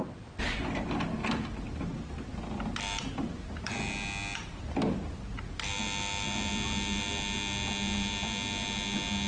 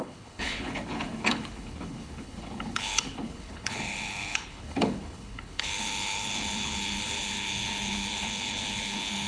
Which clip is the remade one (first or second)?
second